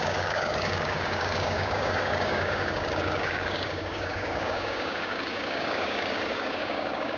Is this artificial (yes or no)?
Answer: yes